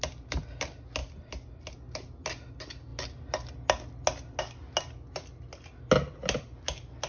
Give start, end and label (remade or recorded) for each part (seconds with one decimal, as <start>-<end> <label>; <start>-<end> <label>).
0.0-7.1 recorded